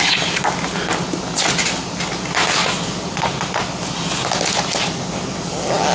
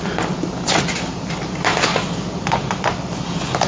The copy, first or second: second